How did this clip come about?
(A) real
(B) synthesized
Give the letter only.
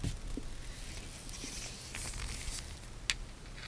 A